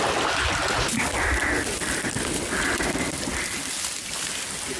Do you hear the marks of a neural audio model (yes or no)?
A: no